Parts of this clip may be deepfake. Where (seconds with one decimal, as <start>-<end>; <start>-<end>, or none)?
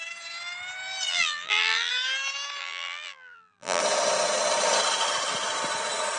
1.1-1.9; 2.6-3.8